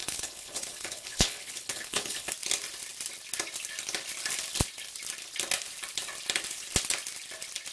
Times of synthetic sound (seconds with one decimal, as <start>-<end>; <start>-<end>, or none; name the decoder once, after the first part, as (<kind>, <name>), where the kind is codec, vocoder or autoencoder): 0.0-2.3 (codec, HILCodec)